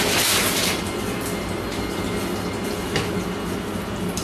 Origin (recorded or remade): recorded